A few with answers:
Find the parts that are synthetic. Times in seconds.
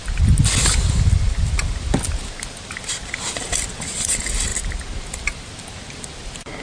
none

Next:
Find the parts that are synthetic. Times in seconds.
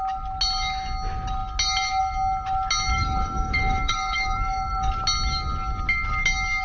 2.9-4.9 (codec, DAC)